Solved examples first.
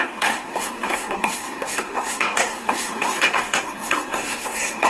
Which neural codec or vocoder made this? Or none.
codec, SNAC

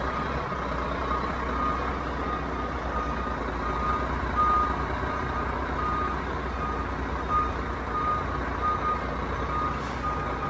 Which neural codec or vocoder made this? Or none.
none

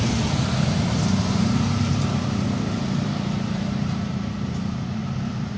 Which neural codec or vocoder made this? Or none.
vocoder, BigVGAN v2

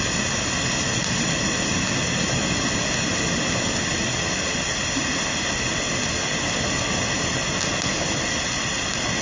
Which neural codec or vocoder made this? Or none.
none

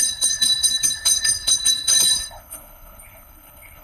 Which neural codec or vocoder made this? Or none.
codec, HILCodec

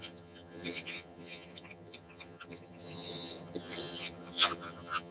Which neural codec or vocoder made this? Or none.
vocoder, HiFi-GAN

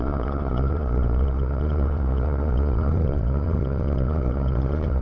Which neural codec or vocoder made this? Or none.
vocoder, Vocos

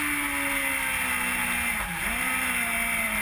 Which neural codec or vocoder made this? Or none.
none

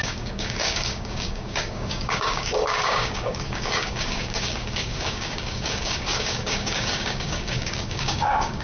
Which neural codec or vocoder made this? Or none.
codec, DAC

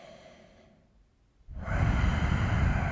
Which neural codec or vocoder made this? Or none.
none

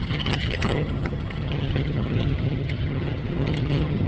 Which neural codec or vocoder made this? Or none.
vocoder, HiFi-GAN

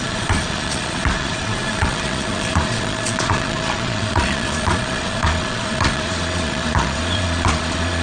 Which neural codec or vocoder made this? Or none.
vocoder, Vocos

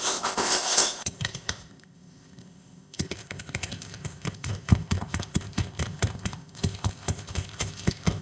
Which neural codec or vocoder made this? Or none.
codec, ZipCodec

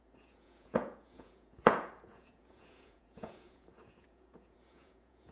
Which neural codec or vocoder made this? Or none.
vocoder, Vocos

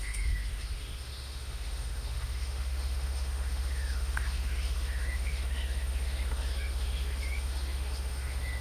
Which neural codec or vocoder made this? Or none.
autoencoder, DAC-VAE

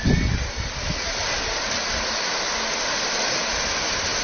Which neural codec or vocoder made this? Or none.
none